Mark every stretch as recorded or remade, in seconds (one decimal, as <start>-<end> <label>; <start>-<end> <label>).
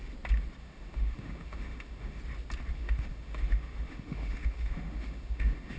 0.0-0.6 recorded; 0.6-2.2 remade; 2.2-2.7 recorded; 2.7-5.8 remade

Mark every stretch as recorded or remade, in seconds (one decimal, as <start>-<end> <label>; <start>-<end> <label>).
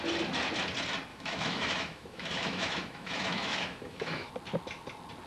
0.0-1.1 recorded; 1.1-4.3 remade; 4.3-5.3 recorded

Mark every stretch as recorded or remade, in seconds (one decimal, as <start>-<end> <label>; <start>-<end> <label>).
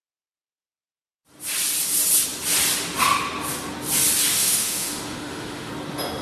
0.0-4.3 recorded; 4.3-5.7 remade; 5.7-6.2 recorded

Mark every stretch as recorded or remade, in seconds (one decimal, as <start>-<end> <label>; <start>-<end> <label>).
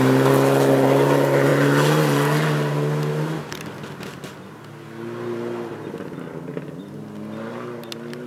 0.0-8.3 recorded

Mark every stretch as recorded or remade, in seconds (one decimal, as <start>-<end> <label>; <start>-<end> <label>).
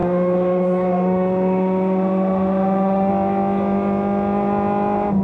0.0-3.1 remade; 3.1-5.2 recorded